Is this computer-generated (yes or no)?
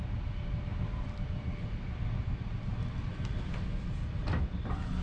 no